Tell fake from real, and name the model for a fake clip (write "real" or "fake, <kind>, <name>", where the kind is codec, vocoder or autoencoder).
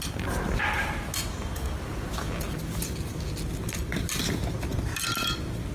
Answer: real